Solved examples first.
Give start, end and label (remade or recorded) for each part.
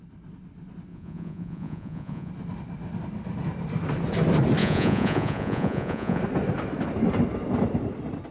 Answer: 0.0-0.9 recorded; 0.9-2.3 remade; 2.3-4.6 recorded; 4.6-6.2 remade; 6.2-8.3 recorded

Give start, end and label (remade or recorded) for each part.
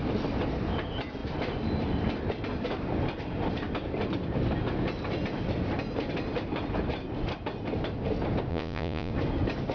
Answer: 0.0-8.5 recorded; 8.5-9.1 remade; 9.1-9.7 recorded